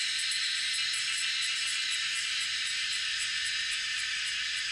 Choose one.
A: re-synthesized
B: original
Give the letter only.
A